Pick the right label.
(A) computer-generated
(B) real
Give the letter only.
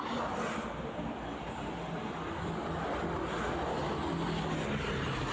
B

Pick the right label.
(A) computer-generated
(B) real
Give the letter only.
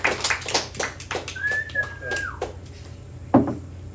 B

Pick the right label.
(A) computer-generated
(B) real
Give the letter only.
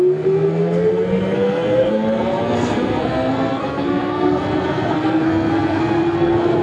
A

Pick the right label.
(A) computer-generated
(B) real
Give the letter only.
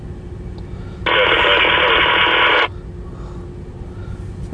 B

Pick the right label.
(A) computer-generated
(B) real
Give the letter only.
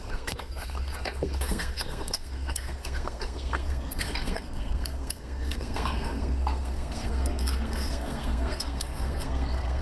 A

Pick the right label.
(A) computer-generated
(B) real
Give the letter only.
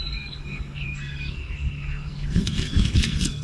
A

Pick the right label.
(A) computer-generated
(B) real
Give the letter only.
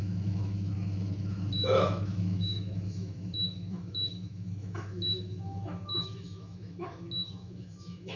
A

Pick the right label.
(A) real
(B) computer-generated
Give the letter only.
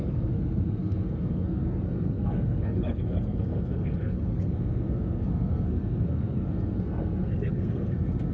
B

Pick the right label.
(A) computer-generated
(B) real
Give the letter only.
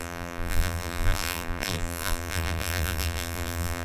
A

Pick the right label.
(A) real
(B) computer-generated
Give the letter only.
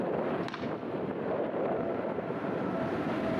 A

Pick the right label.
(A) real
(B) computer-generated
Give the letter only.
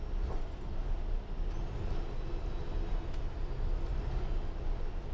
A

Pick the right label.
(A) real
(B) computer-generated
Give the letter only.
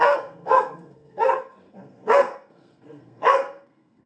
B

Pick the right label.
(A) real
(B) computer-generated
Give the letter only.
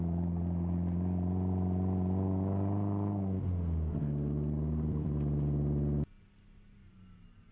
A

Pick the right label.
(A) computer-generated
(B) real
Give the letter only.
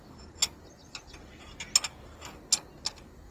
B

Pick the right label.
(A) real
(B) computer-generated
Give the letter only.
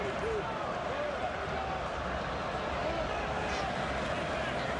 A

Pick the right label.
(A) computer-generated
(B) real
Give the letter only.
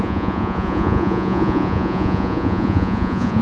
A